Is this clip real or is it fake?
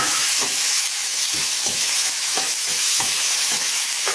fake